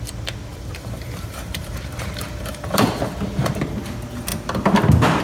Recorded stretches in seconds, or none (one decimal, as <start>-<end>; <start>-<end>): 0.0-0.5; 3.5-5.2

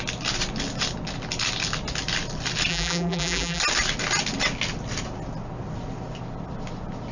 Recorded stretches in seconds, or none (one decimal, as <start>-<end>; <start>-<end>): 0.0-2.7; 3.6-7.1